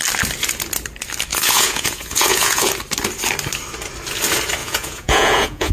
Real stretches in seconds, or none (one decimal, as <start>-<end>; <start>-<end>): 0.0-1.3; 2.7-4.6